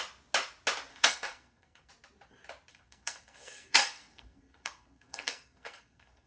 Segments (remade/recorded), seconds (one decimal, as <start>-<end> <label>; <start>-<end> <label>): 0.0-0.9 recorded; 0.9-1.9 remade; 1.9-2.7 recorded; 2.7-6.3 remade